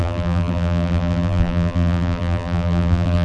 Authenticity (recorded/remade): remade